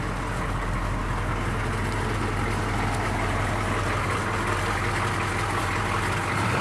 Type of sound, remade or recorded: recorded